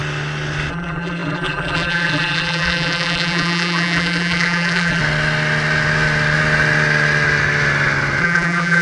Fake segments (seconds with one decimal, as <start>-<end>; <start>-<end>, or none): 0.7-5.0; 8.2-8.8